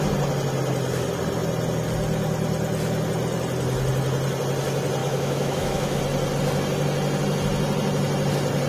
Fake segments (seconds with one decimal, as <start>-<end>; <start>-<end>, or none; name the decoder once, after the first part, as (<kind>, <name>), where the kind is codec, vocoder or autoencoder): 5.0-6.0 (autoencoder, DAC-VAE)